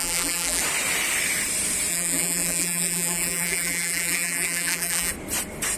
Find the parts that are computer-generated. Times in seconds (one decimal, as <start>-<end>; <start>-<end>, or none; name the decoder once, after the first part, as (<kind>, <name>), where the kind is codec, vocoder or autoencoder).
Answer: 0.0-0.6 (vocoder, BigVGAN v2); 1.9-5.1

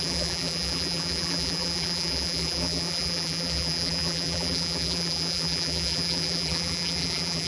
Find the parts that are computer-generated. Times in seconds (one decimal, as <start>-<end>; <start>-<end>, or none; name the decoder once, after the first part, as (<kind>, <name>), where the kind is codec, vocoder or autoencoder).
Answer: 0.0-7.5 (vocoder, BigVGAN v2)

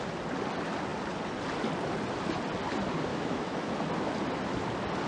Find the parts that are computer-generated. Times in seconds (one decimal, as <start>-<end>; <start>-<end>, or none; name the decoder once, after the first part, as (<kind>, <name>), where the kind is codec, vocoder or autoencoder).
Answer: 3.1-3.7 (autoencoder, DAC-VAE)

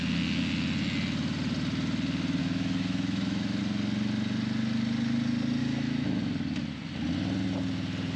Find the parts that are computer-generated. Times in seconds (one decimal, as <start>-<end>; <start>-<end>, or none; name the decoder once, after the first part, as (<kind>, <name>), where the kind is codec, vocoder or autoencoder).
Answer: 2.4-3.6 (autoencoder, DAC-VAE); 5.6-6.2

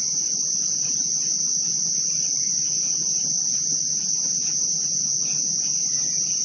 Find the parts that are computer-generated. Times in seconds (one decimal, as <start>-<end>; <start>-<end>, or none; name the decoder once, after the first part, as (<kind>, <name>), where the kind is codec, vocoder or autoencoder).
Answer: none

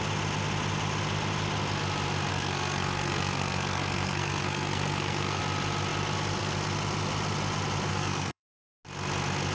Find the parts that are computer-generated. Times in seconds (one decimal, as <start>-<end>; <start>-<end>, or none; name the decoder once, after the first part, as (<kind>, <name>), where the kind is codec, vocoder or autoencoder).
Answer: 2.3-5.4 (codec, SNAC); 7.9-8.7

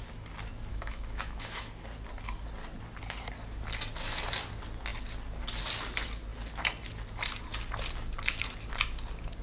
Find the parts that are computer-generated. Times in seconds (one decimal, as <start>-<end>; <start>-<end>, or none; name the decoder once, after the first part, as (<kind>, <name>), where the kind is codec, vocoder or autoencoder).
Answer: 0.7-1.7 (autoencoder, DAC-VAE)